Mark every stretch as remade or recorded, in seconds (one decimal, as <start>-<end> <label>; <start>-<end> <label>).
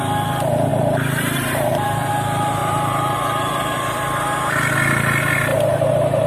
0.0-0.7 recorded; 0.7-2.1 remade; 2.1-2.6 recorded; 2.6-4.5 remade; 4.5-5.5 recorded; 5.5-6.3 remade